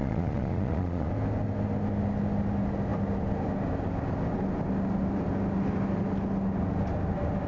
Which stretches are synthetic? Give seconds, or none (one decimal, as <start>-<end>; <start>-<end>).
0.0-1.1